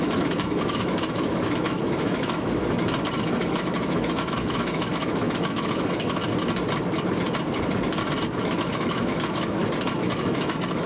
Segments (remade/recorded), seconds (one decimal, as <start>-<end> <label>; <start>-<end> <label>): 0.0-2.6 remade; 2.6-3.2 recorded; 3.2-6.2 remade; 6.2-8.4 recorded; 8.4-9.6 remade; 9.6-10.2 recorded; 10.2-10.9 remade